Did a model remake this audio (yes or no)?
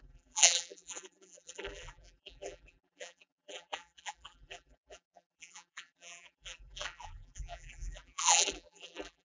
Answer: yes